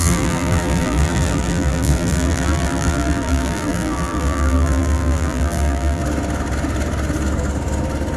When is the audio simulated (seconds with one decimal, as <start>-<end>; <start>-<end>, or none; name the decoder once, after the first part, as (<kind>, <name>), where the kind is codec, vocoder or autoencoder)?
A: 0.0-6.0 (vocoder, BigVGAN v2)